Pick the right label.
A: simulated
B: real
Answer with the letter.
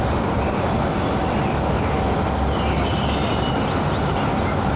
B